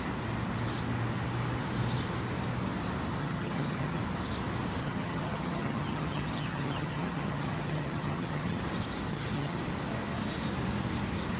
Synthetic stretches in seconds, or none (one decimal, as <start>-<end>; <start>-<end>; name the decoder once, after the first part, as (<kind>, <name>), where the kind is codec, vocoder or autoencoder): 3.2-4.0 (vocoder, HiFi-GAN); 4.8-8.6; 9.1-9.6